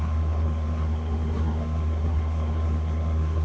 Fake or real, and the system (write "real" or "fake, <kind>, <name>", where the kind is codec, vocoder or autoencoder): fake, codec, SNAC